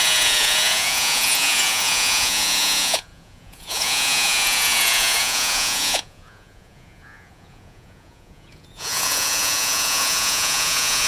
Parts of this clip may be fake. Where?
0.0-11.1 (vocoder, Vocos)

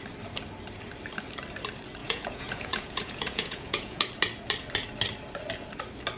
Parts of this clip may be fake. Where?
2.0-4.0 (vocoder, Vocos)

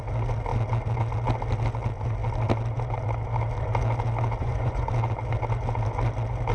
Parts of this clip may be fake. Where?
4.4-4.9 (vocoder, Vocos)

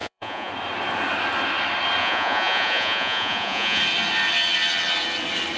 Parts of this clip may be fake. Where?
0.0-0.5 (vocoder, Vocos); 2.0-3.8

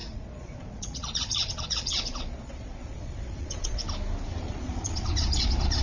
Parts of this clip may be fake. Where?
0.0-3.8 (vocoder, Vocos); 4.5-5.8

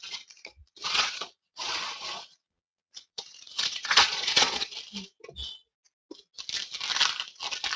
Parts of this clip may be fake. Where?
0.0-4.7 (vocoder, Vocos)

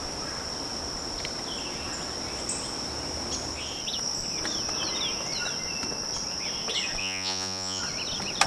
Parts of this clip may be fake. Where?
7.0-7.8 (vocoder, Vocos)

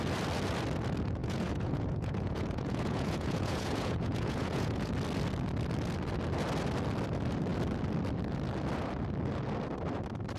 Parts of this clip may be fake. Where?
1.2-4.9 (vocoder, Vocos)